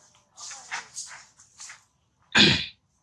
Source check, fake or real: real